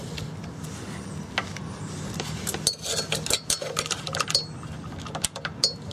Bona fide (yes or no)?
yes